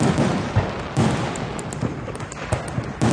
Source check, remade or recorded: recorded